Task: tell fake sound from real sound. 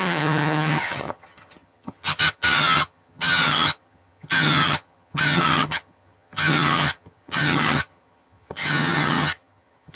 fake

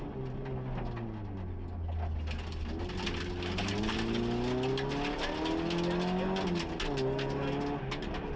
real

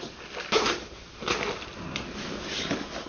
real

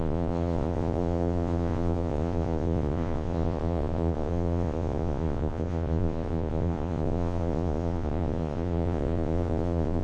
fake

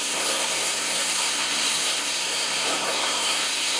fake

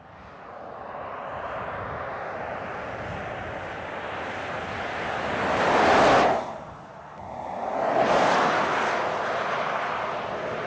real